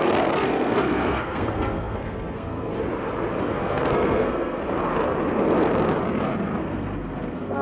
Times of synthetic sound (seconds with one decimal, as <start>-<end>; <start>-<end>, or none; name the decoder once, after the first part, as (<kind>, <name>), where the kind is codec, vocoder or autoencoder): 0.0-2.7 (codec, SNAC); 3.4-4.6; 6.6-7.6